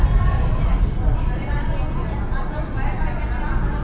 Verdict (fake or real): real